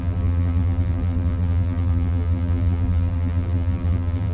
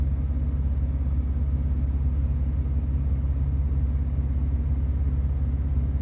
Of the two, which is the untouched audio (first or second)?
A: second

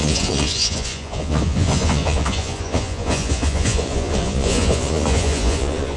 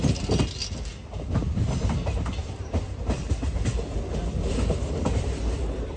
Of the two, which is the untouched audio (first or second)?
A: second